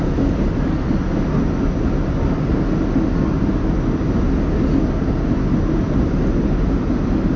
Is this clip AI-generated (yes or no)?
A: no